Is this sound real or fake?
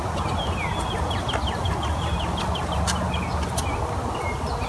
real